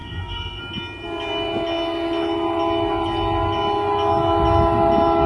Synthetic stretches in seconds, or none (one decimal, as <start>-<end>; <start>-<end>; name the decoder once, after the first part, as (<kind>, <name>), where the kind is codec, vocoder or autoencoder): 0.0-0.6 (codec, SNAC)